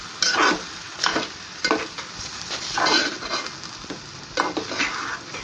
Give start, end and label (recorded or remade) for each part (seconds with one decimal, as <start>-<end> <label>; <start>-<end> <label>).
0.0-5.4 recorded